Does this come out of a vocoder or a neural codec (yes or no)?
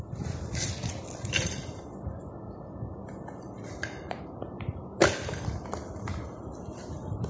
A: no